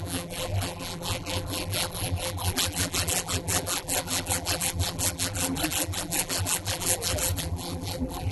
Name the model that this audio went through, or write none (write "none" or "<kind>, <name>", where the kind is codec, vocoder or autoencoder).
vocoder, BigVGAN v2